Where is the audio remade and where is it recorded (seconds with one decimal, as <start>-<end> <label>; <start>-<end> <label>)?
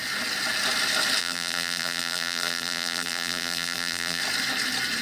0.0-1.2 recorded; 1.2-4.2 remade; 4.2-5.0 recorded